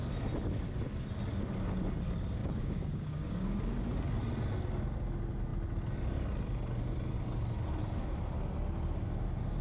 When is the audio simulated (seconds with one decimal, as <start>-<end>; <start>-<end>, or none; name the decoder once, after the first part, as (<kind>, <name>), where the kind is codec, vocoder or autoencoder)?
2.4-4.2 (codec, DAC)